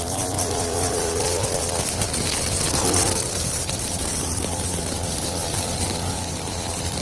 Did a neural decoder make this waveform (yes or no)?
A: yes